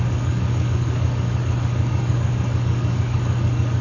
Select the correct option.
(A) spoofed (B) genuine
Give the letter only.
A